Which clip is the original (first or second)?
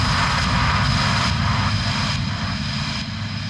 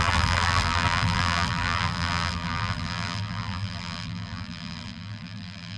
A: first